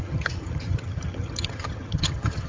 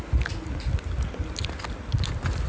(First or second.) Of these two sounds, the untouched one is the second